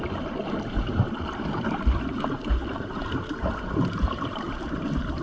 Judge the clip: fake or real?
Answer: fake